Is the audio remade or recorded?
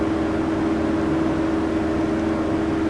recorded